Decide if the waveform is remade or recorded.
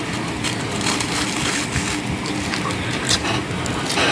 recorded